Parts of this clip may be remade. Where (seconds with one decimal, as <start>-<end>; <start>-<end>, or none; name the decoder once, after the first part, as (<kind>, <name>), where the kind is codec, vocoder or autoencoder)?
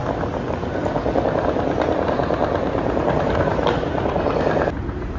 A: 3.1-5.2 (vocoder, BigVGAN v2)